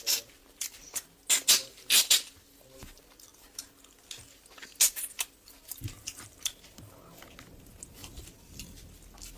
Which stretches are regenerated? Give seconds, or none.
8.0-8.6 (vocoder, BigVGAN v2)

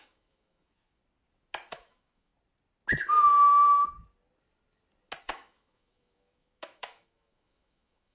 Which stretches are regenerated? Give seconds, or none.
0.0-1.0 (autoencoder, DAC-VAE); 1.7-2.3; 5.2-8.1

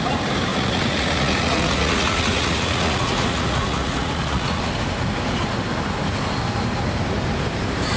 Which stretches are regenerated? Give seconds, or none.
0.5-4.7 (vocoder, Vocos)